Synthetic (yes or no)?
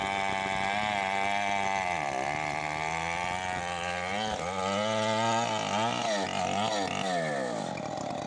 no